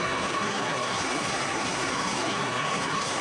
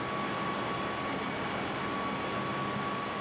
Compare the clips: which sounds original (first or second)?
second